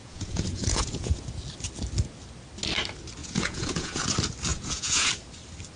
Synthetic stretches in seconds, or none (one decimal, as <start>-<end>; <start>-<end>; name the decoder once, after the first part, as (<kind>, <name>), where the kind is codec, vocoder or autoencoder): 0.0-1.2 (vocoder, Vocos); 3.2-4.0; 4.5-5.1